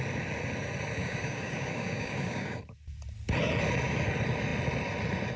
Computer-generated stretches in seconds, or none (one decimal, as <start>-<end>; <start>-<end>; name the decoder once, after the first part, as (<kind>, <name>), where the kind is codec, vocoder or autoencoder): 1.0-2.6 (codec, DAC)